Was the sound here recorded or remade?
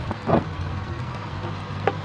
remade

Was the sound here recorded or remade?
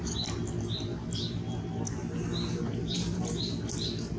recorded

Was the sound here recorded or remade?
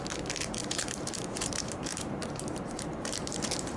remade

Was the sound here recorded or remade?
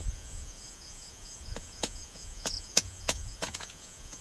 remade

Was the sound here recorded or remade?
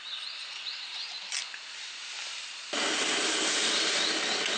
recorded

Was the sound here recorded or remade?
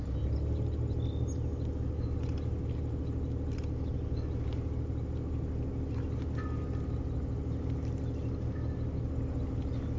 recorded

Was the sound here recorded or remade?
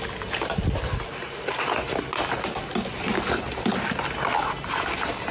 recorded